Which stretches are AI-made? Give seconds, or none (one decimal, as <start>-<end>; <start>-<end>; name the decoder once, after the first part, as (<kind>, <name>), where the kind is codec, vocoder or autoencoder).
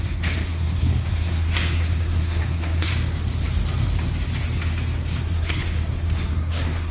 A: 0.0-2.9 (codec, SNAC); 5.2-6.9